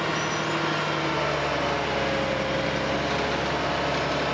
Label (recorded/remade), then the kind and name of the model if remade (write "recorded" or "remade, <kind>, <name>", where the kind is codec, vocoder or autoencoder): recorded